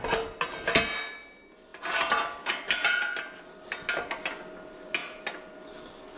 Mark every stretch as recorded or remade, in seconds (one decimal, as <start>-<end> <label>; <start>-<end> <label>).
0.0-6.2 recorded